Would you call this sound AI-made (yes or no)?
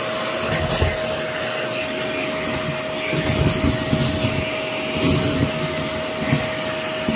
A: no